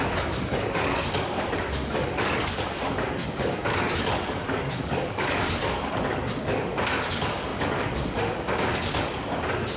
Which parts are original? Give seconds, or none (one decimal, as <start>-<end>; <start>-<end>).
none